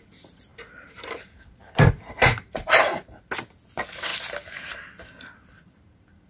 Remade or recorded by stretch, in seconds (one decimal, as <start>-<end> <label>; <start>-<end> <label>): 0.0-0.5 recorded; 0.5-3.0 remade; 3.0-6.3 recorded